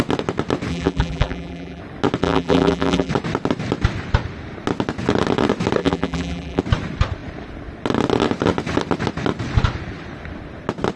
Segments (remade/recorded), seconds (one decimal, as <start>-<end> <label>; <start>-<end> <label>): 0.0-0.7 recorded; 0.7-1.8 remade; 1.8-2.2 recorded; 2.2-3.1 remade; 3.1-5.8 recorded; 5.8-6.6 remade; 6.6-11.0 recorded